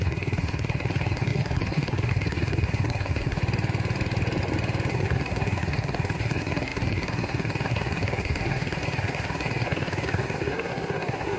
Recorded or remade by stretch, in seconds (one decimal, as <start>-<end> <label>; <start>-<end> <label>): 0.0-3.4 remade; 3.4-4.9 recorded; 4.9-11.4 remade